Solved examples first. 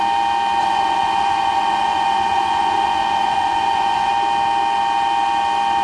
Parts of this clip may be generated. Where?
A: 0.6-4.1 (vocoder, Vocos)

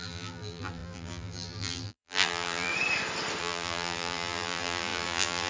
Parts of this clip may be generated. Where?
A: 0.0-2.7 (vocoder, BigVGAN v2); 3.4-5.5

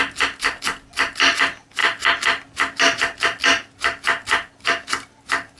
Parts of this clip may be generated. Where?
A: none